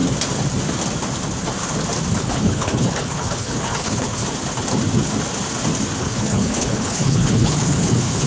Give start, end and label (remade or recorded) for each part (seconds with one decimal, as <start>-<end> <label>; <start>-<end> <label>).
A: 0.0-2.2 recorded; 2.2-4.2 remade; 4.2-6.0 recorded; 6.0-8.3 remade

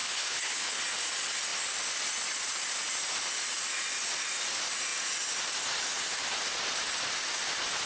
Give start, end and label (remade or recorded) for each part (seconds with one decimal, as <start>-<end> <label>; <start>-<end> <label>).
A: 0.0-0.8 remade; 0.8-7.9 recorded

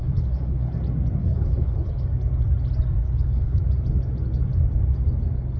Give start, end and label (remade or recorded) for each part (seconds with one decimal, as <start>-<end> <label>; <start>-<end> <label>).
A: 0.0-0.7 remade; 0.7-1.2 recorded; 1.2-1.9 remade; 1.9-3.0 recorded; 3.0-3.6 remade; 3.6-5.6 recorded

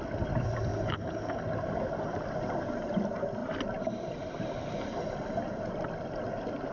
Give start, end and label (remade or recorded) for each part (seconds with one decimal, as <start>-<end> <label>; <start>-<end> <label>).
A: 0.0-0.7 recorded; 0.7-1.4 remade; 1.4-6.7 recorded